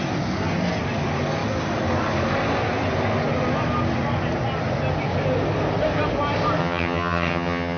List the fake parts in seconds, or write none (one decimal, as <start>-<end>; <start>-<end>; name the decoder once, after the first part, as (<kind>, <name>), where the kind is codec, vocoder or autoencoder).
6.6-7.8 (vocoder, HiFi-GAN)